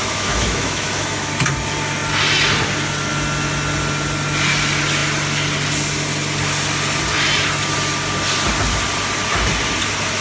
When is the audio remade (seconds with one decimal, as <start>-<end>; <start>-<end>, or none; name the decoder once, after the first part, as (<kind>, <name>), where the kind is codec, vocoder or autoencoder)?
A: 0.0-1.3 (autoencoder, DAC-VAE)